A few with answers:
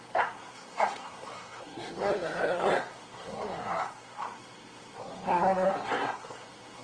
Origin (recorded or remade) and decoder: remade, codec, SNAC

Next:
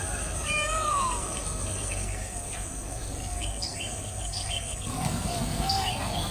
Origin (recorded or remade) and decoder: remade, codec, SNAC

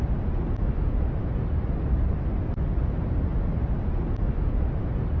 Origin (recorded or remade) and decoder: recorded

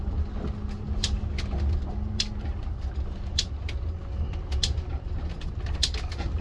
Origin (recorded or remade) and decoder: recorded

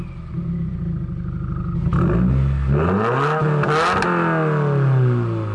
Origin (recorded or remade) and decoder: recorded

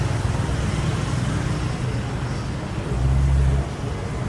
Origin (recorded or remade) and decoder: recorded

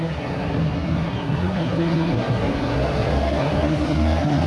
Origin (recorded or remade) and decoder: remade, codec, SNAC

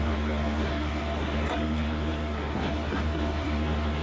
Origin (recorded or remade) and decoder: remade, codec, SNAC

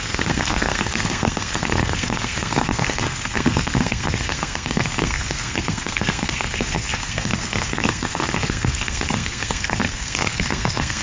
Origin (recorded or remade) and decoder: remade, codec, SNAC